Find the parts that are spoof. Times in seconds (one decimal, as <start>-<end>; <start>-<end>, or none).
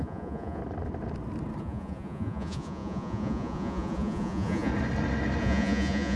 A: 0.0-0.6; 1.6-4.7; 5.4-6.2